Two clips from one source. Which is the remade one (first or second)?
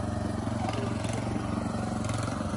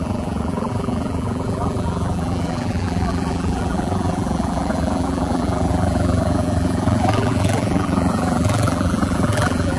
second